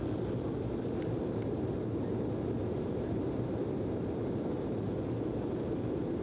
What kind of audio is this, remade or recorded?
recorded